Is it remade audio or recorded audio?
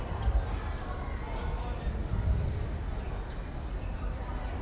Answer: recorded